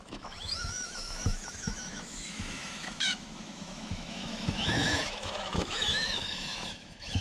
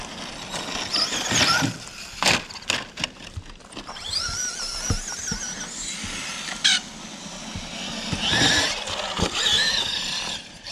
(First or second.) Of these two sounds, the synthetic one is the first